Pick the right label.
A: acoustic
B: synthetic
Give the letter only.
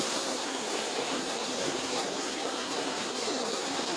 B